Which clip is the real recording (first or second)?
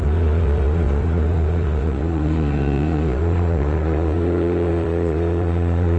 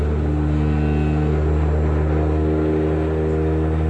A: second